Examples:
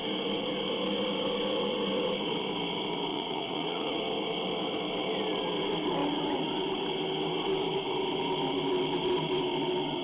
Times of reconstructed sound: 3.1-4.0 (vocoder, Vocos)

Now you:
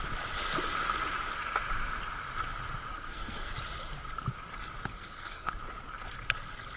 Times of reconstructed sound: 2.9-3.5 (codec, SNAC); 4.9-5.5

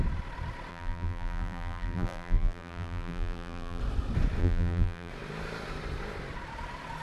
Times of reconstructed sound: 0.7-3.8 (vocoder, BigVGAN v2); 4.4-5.1

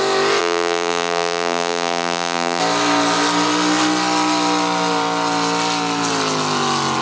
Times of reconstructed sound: 0.4-2.6 (vocoder, BigVGAN v2)

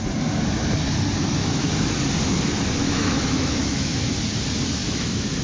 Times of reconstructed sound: 1.4-2.0 (autoencoder, DAC-VAE); 2.8-4.1; 4.8-5.4

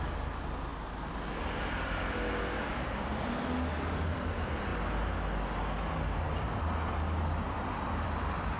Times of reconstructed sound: 0.0-0.7 (vocoder, BigVGAN v2); 1.6-4.7; 6.3-8.6

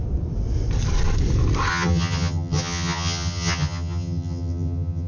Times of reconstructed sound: 1.7-5.1 (vocoder, HiFi-GAN)

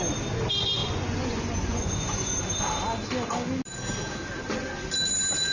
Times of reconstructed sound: 0.8-2.4 (vocoder, Vocos)